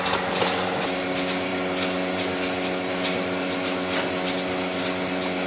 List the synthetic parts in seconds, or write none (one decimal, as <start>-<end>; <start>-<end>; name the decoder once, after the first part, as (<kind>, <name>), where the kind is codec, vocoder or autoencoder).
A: none